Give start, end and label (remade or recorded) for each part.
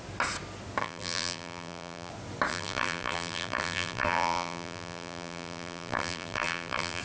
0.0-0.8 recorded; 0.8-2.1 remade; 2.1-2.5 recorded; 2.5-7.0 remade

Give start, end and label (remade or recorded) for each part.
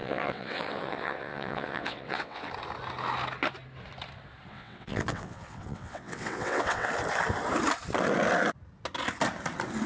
0.0-2.5 remade; 2.5-4.5 recorded; 4.5-6.9 remade; 6.9-9.9 recorded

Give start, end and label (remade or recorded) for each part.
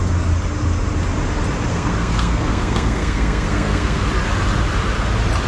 0.0-1.7 recorded; 1.7-4.1 remade; 4.1-5.5 recorded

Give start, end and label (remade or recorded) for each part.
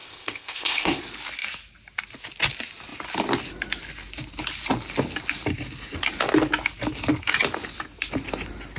0.0-1.0 remade; 1.0-8.8 recorded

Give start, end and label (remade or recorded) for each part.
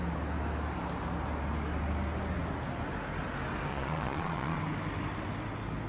0.0-3.7 recorded; 3.7-4.6 remade; 4.6-5.9 recorded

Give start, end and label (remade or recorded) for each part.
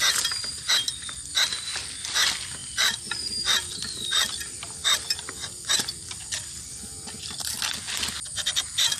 0.0-2.6 recorded; 2.6-6.8 remade; 6.8-9.0 recorded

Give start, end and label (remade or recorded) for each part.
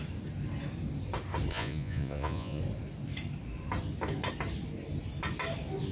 0.0-1.5 recorded; 1.5-2.6 remade; 2.6-5.9 recorded